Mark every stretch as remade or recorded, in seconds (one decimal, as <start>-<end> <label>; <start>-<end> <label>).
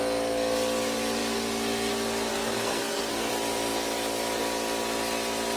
0.0-2.3 recorded; 2.3-3.3 remade; 3.3-5.6 recorded